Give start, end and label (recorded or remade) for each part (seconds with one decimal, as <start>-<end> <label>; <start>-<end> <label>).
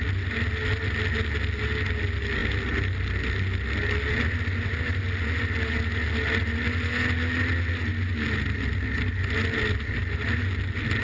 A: 0.0-11.0 recorded